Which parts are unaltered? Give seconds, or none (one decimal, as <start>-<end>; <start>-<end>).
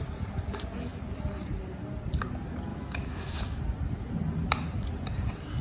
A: 0.0-2.7; 3.6-5.6